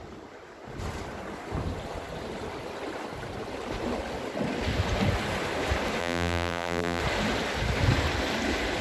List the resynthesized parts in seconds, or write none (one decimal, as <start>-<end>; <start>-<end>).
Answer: 6.0-7.0

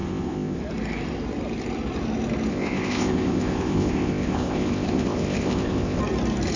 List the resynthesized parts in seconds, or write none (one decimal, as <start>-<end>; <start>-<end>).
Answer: 0.0-0.6; 2.5-6.0

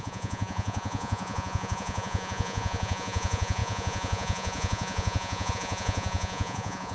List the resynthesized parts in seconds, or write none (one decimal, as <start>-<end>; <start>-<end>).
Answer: 0.0-6.9

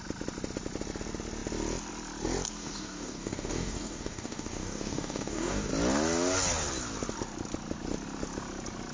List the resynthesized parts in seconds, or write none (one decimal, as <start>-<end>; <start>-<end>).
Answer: 2.6-5.7

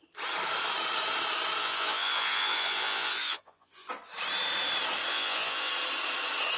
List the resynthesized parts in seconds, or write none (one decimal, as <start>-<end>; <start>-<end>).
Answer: 1.6-3.9; 5.1-5.7